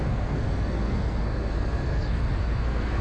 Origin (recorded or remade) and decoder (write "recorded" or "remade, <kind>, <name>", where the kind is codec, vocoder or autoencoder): remade, codec, SNAC